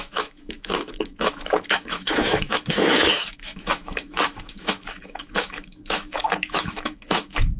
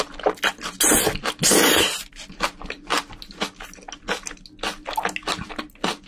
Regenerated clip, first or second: first